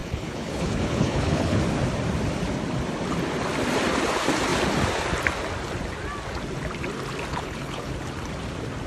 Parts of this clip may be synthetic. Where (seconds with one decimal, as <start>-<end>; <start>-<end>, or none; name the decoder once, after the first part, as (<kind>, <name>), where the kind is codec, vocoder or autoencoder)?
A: 0.0-1.6 (codec, HILCodec); 7.3-7.9